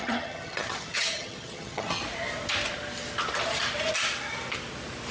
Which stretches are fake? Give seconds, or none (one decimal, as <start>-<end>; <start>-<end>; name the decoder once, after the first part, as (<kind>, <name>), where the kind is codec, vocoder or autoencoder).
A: 0.0-2.0 (vocoder, HiFi-GAN)